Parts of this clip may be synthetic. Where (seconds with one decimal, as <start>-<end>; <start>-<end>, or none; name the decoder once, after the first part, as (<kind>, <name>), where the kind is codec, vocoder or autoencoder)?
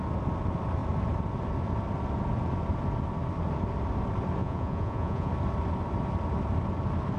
4.4-5.3 (vocoder, Vocos)